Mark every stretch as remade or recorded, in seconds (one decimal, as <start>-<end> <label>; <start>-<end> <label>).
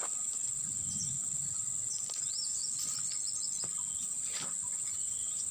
0.0-2.6 remade; 2.6-5.0 recorded; 5.0-5.5 remade